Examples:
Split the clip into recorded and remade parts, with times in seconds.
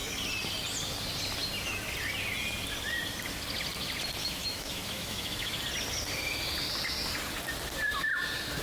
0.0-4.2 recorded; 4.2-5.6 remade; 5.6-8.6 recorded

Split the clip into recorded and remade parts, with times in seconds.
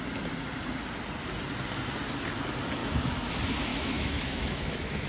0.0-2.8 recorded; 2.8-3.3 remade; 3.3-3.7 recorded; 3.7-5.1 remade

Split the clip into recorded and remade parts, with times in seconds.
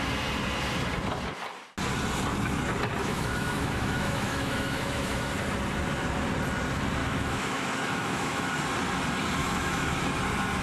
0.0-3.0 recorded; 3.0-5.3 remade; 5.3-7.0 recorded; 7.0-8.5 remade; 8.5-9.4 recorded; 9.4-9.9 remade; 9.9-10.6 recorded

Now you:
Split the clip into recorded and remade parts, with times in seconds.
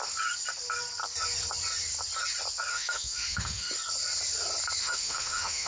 0.0-2.7 recorded; 2.7-3.7 remade; 3.7-4.8 recorded; 4.8-5.7 remade